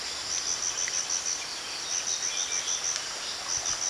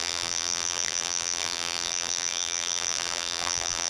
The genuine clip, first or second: first